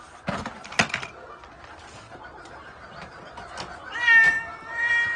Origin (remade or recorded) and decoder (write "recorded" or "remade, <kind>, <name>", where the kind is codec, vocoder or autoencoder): recorded